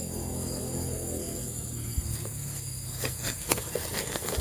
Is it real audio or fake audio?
fake